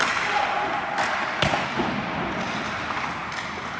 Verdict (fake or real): real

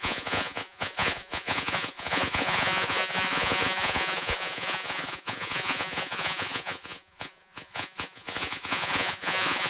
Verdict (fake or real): fake